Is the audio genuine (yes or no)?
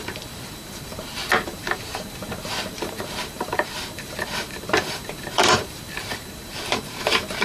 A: no